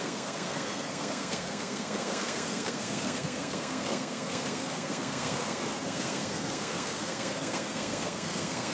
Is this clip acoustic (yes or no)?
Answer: no